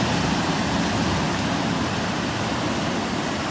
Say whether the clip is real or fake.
real